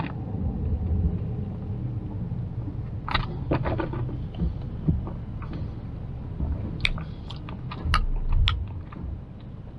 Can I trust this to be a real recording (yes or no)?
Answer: yes